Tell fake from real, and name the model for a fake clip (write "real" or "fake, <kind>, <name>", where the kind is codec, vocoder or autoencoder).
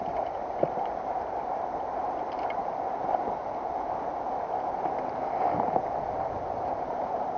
real